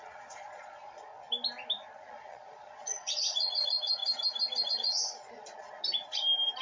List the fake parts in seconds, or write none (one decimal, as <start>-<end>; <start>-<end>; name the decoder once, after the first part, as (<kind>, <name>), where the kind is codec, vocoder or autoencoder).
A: 0.0-1.1 (vocoder, Vocos); 2.1-4.0; 4.7-5.8

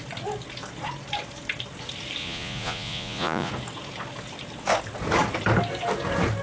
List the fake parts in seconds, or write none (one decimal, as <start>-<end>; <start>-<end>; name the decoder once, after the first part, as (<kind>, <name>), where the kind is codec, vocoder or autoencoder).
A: 2.2-3.5 (vocoder, Vocos)

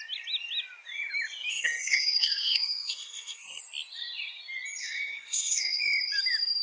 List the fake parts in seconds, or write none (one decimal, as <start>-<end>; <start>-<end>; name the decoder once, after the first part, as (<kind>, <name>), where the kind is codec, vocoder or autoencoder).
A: 1.5-3.6 (codec, SNAC); 4.8-5.8

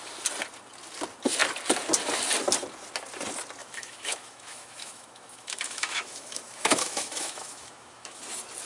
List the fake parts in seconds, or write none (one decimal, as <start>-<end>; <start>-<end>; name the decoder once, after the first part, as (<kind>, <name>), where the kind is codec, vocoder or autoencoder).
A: 3.6-8.2 (autoencoder, DAC-VAE)

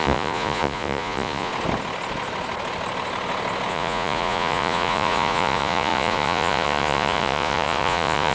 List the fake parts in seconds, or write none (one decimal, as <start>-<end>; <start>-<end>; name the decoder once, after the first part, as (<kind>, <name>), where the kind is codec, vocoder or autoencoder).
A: 0.0-1.5 (vocoder, Vocos); 3.7-8.3

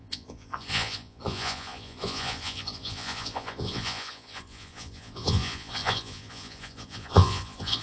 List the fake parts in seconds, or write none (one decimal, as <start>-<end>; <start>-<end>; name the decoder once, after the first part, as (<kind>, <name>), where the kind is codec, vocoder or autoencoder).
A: 0.0-7.8 (vocoder, Vocos)